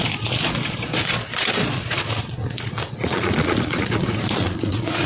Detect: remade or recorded remade